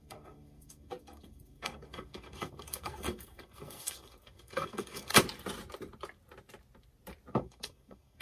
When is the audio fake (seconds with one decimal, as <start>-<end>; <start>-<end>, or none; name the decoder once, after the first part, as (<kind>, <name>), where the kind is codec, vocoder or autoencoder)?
0.0-5.1 (codec, SNAC); 7.3-8.2